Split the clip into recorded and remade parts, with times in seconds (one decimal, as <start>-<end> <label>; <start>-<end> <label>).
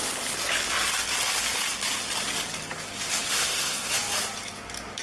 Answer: 0.0-3.4 recorded; 3.4-3.9 remade; 3.9-5.0 recorded